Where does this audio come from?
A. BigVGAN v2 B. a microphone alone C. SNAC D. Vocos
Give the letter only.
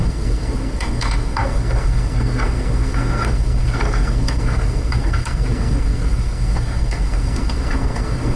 C